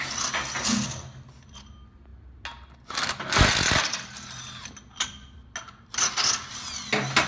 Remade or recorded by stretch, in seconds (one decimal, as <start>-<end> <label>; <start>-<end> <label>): 0.0-7.3 recorded